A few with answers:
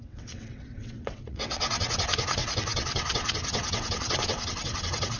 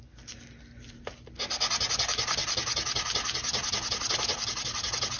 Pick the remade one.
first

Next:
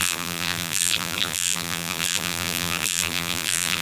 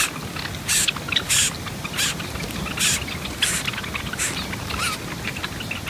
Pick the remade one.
first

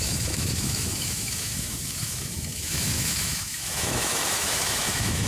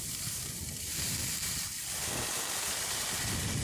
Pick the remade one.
first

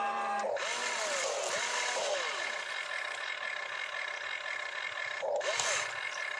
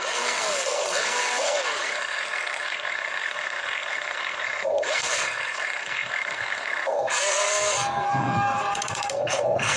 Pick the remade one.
second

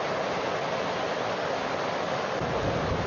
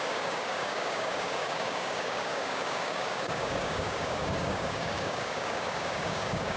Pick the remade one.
second